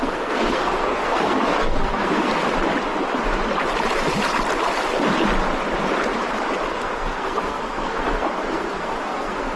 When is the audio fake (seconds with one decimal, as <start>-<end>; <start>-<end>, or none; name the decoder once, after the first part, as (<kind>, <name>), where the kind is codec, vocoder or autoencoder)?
0.0-2.3 (codec, SNAC); 6.7-9.6